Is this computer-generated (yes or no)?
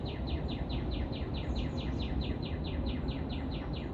no